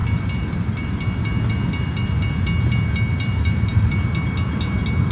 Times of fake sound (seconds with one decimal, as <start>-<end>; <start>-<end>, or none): none